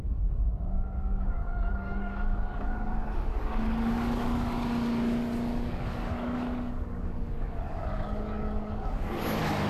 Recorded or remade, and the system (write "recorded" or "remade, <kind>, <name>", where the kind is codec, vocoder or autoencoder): remade, codec, DAC